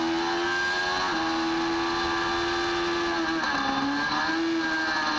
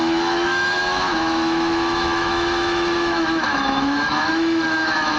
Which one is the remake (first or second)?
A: second